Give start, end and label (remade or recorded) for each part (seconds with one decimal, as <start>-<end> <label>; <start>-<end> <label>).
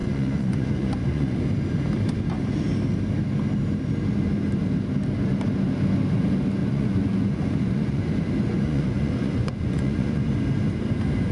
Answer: 0.0-1.4 remade; 1.4-6.6 recorded; 6.6-8.1 remade; 8.1-8.5 recorded; 8.5-10.3 remade; 10.3-11.3 recorded